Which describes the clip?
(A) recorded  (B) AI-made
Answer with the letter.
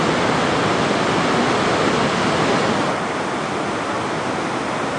A